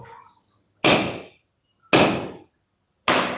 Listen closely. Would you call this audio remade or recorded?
recorded